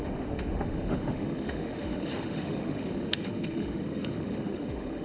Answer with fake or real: fake